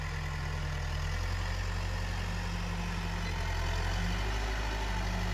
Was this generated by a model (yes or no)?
no